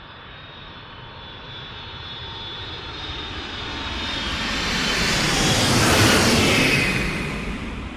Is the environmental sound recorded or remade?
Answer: remade